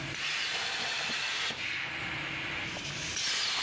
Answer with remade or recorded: remade